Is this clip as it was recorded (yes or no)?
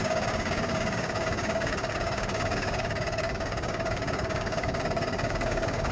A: no